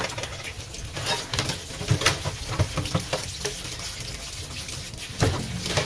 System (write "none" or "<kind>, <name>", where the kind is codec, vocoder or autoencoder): none